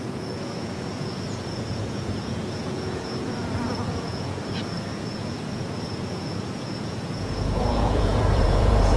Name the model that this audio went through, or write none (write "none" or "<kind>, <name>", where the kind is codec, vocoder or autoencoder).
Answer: vocoder, Vocos